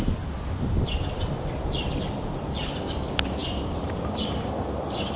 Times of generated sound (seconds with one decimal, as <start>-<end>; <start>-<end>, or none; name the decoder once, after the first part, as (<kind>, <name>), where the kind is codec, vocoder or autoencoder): none

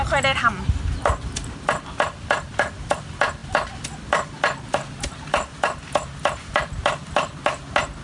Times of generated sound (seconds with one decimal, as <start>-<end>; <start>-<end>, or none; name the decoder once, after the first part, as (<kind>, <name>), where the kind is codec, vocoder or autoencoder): none

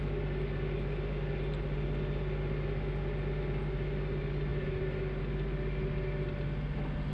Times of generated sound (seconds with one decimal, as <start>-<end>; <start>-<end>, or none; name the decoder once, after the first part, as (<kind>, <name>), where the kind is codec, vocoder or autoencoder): none

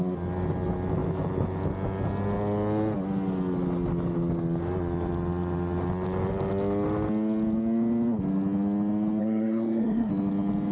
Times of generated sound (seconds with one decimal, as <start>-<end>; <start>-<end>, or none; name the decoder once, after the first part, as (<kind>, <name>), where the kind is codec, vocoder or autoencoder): 9.2-10.1 (codec, SNAC)

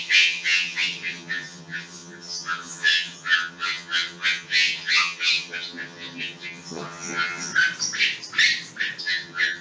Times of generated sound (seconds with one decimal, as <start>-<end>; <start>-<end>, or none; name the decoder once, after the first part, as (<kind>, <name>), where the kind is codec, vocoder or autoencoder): 0.0-7.5 (vocoder, HiFi-GAN); 9.0-9.6

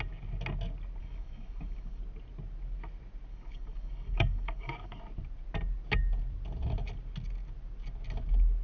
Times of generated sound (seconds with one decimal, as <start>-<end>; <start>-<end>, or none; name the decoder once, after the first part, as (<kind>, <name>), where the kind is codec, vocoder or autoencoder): 1.0-2.0 (codec, DAC); 3.3-5.0

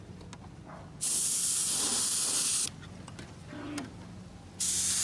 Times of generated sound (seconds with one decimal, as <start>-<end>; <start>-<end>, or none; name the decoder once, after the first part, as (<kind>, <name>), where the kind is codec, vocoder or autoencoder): none